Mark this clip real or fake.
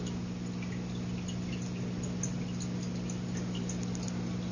real